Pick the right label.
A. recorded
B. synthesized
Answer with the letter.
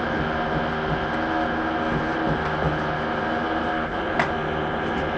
A